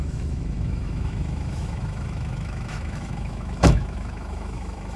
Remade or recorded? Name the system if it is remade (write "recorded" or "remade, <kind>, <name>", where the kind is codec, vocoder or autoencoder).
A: remade, autoencoder, DAC-VAE